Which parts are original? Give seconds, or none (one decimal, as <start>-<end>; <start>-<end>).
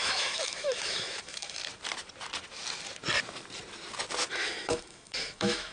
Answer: 1.6-4.3